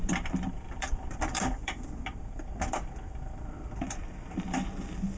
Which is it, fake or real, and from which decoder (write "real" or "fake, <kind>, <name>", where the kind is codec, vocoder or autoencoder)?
fake, vocoder, BigVGAN v2